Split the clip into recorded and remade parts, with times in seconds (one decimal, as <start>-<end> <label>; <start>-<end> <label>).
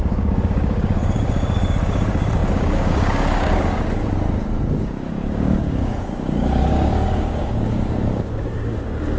0.0-4.0 remade; 4.0-4.7 recorded; 4.7-9.2 remade